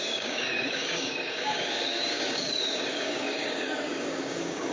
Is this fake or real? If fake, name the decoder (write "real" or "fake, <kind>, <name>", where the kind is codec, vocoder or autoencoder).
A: fake, codec, DAC